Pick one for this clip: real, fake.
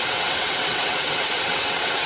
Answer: fake